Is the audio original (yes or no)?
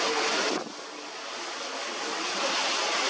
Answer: yes